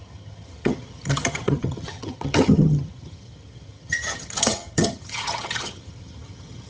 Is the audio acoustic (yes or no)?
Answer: no